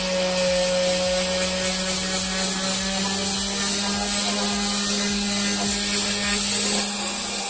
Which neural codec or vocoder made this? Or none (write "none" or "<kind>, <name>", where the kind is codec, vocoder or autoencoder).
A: none